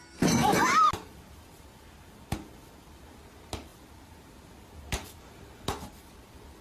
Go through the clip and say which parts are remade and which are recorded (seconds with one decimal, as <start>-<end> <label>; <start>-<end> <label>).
0.0-6.6 recorded